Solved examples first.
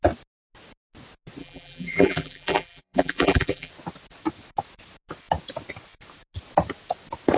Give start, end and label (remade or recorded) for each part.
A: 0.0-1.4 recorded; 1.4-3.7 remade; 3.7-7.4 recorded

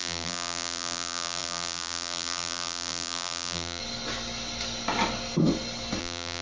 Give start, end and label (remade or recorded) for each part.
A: 0.0-3.8 remade; 3.8-6.0 recorded; 6.0-6.4 remade

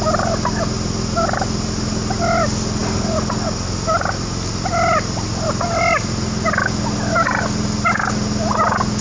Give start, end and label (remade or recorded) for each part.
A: 0.0-9.0 recorded

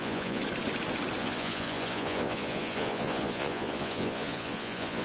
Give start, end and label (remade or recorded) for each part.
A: 0.0-0.4 remade; 0.4-1.2 recorded; 1.2-5.0 remade

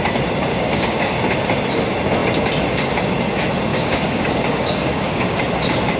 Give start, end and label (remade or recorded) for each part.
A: 0.0-0.5 recorded; 0.5-1.1 remade; 1.1-3.7 recorded; 3.7-5.4 remade; 5.4-6.0 recorded

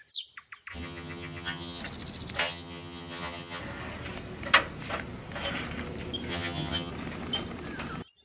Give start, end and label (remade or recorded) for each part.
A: 0.0-0.7 recorded; 0.7-1.8 remade; 1.8-2.4 recorded; 2.4-3.6 remade; 3.6-6.3 recorded; 6.3-6.9 remade; 6.9-8.2 recorded